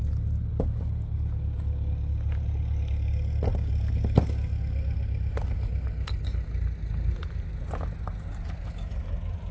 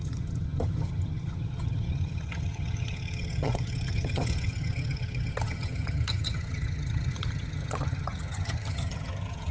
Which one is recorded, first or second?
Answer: first